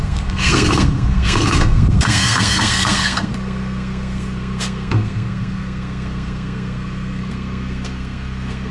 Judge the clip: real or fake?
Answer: fake